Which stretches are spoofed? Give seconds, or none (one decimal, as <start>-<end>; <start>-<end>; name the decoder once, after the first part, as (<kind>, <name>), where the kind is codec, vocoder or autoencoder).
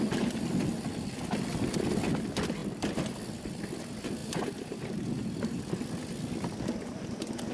4.2-5.6 (vocoder, BigVGAN v2)